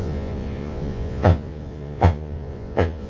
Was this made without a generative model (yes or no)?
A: no